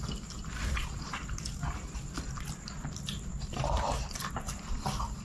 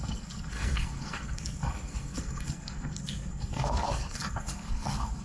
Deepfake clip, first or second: second